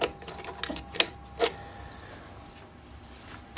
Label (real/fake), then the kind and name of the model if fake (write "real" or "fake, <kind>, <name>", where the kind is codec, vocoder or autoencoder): real